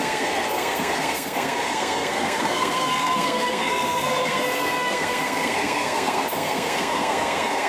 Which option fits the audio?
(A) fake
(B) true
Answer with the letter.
A